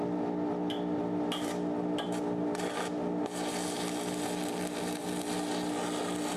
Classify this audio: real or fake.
real